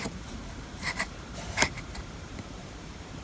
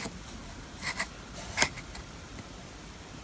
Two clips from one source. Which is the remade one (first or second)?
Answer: first